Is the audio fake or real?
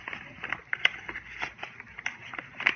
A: real